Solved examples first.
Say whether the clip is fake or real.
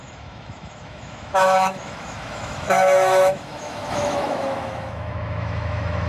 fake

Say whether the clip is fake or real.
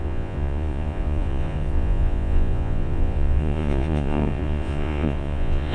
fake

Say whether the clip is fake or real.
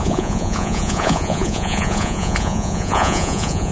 fake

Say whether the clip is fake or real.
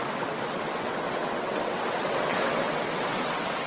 fake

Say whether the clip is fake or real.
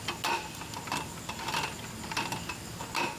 real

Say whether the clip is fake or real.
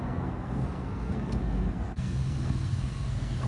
fake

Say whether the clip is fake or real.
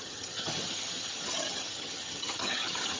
fake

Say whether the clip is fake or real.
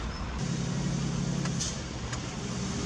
real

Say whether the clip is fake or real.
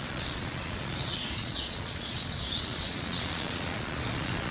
fake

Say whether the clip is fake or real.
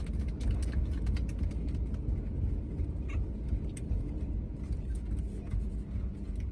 real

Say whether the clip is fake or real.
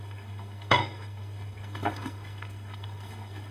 fake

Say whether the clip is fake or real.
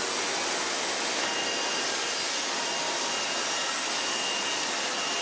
real